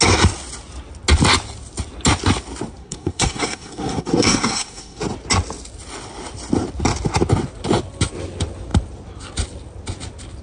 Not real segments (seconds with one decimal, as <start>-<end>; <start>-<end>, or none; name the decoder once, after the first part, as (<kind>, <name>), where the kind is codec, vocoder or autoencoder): 2.8-5.0 (codec, SNAC)